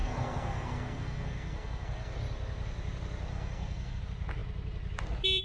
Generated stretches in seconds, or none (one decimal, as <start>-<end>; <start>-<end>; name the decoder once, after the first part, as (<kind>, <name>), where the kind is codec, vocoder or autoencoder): 0.0-2.2 (codec, SNAC); 3.3-4.0